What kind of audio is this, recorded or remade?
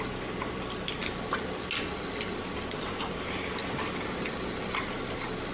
recorded